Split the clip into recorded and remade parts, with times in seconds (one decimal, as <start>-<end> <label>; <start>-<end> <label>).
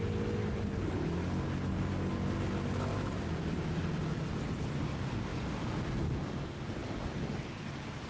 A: 0.0-2.9 recorded; 2.9-4.7 remade; 4.7-5.3 recorded; 5.3-6.1 remade; 6.1-8.1 recorded